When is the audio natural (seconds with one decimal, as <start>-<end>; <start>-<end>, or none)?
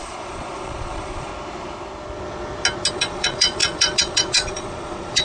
1.3-2.9